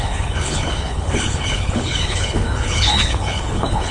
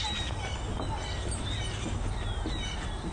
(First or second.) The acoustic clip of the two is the second